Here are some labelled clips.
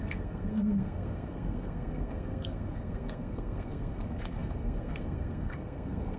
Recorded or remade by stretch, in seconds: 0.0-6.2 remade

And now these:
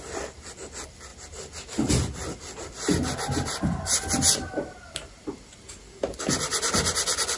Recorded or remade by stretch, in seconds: 0.0-7.4 recorded

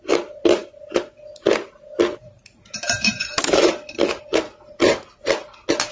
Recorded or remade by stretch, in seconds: 0.0-0.6 recorded; 0.6-1.1 remade; 1.1-2.2 recorded; 2.2-3.7 remade; 3.7-5.9 recorded

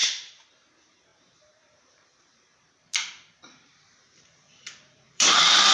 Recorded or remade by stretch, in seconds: 0.0-5.7 remade

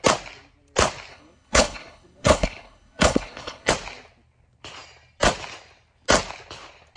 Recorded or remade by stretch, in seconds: 0.0-1.1 recorded; 1.1-3.7 remade; 3.7-7.0 recorded